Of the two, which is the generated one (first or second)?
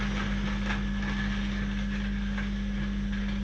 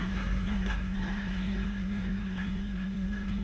second